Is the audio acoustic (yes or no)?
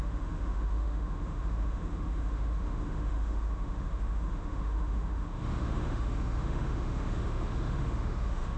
no